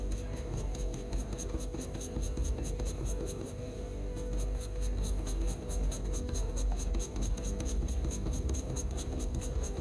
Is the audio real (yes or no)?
no